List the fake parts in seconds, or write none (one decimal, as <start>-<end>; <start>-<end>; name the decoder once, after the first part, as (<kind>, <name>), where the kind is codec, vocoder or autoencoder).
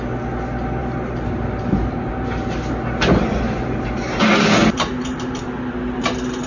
0.8-2.1 (vocoder, BigVGAN v2); 4.6-5.4